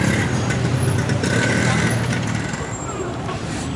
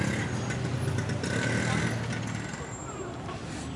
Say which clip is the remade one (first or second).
first